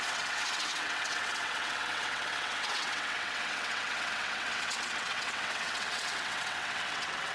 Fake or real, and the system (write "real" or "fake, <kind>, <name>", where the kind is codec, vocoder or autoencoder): fake, vocoder, WaveNeXt